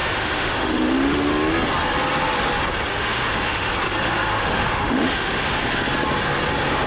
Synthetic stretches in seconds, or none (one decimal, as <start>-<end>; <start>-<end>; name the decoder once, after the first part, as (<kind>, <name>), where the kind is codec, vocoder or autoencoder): 0.0-1.3 (autoencoder, DAC-VAE); 2.9-3.7; 4.3-5.6